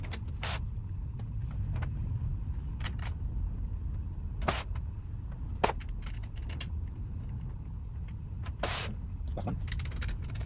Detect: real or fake real